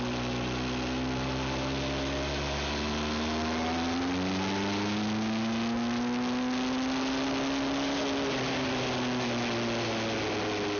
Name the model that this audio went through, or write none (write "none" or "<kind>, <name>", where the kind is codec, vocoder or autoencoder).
none